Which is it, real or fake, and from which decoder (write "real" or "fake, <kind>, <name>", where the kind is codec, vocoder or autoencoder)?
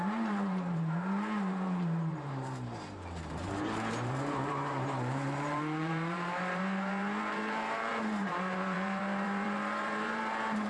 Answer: fake, vocoder, BigVGAN v2